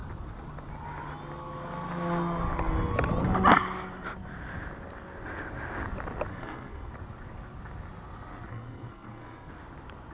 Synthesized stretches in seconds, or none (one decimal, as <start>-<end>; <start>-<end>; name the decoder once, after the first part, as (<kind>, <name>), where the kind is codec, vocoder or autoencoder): 6.3-6.9 (codec, SNAC); 8.5-9.5